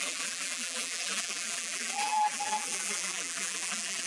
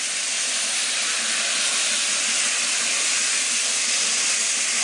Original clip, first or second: second